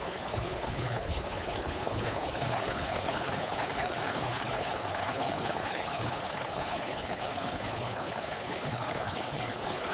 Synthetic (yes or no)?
yes